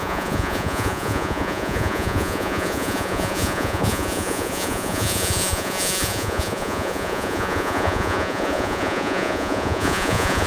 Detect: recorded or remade remade